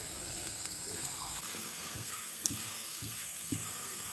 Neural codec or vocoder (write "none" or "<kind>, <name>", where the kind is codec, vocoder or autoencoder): codec, SNAC